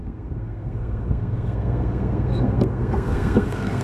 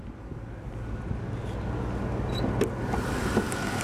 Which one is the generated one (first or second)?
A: first